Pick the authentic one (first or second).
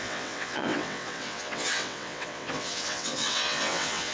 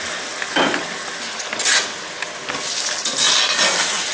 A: second